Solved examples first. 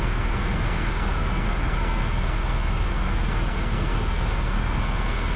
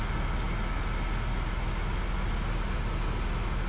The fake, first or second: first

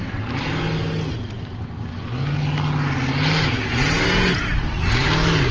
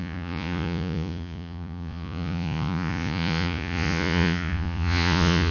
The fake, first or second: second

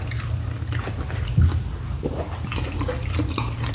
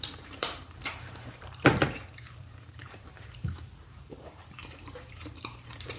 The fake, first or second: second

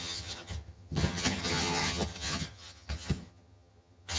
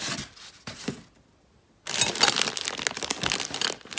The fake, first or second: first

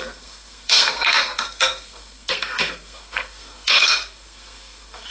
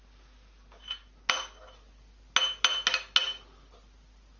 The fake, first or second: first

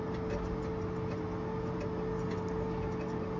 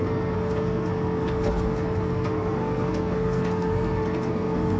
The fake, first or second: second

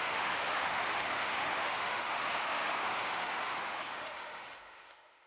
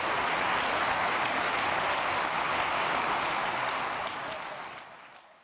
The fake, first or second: first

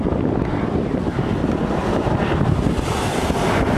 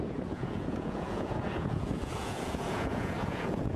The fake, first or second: second